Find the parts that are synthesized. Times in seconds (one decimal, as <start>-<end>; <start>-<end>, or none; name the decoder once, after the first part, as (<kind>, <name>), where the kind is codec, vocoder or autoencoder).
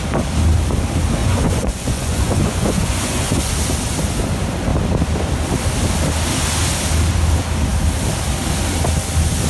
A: 1.2-3.5 (vocoder, Vocos)